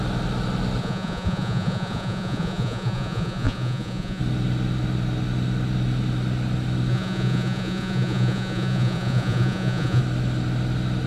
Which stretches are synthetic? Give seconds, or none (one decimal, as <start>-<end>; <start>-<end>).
0.8-4.2; 6.9-10.0